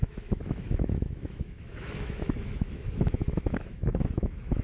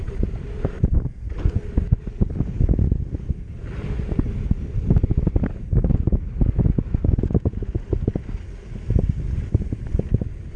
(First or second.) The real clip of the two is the second